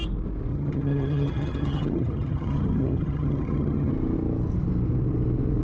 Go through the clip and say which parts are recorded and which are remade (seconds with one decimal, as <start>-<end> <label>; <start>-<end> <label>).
0.0-0.5 recorded; 0.5-3.9 remade; 3.9-5.6 recorded